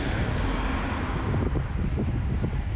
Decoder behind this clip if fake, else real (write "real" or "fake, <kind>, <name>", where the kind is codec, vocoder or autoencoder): real